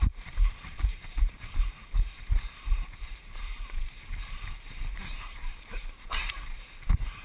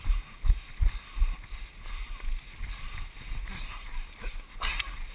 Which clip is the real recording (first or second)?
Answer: second